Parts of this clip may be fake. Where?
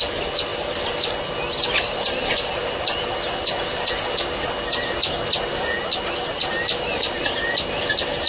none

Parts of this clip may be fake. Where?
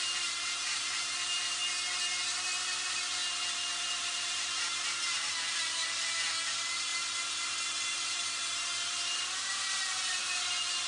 0.0-1.6 (vocoder, BigVGAN v2); 2.8-3.2; 3.8-6.9; 8.0-10.9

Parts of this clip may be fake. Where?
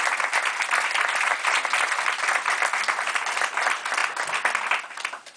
none